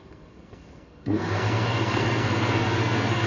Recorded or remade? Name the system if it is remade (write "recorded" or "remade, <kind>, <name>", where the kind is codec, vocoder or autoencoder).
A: remade, codec, SNAC